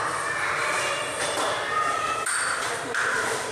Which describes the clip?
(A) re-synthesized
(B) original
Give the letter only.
B